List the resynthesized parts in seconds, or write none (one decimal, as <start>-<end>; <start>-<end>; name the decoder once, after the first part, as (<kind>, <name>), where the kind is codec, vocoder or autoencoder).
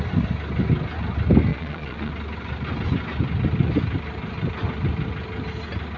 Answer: 1.5-2.1 (vocoder, Vocos)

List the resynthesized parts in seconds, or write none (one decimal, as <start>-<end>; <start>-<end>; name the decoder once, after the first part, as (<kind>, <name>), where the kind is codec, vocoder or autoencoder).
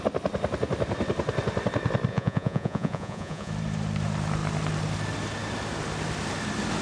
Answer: 2.1-3.5 (vocoder, Vocos)